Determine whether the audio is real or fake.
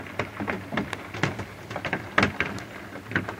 real